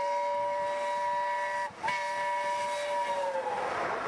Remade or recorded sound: recorded